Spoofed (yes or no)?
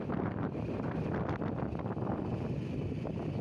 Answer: yes